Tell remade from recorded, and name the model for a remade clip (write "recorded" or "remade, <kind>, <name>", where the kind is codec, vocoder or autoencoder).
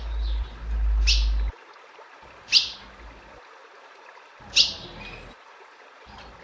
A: recorded